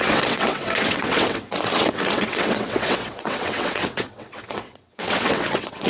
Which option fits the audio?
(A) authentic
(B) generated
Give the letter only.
B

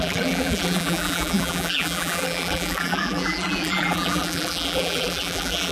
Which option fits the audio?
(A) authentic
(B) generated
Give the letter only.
B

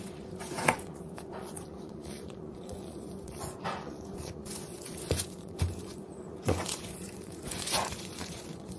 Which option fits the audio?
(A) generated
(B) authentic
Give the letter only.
A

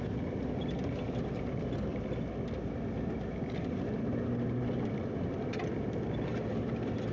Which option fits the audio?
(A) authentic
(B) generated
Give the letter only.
A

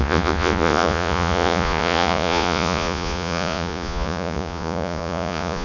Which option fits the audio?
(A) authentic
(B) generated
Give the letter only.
B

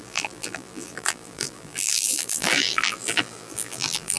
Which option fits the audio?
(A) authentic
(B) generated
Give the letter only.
B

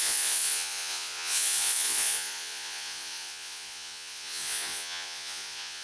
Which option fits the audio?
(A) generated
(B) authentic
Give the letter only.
A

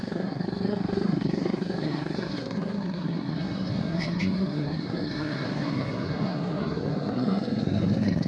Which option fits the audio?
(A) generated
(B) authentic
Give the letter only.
A